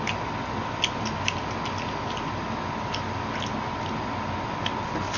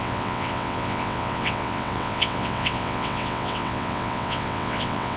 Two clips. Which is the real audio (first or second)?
first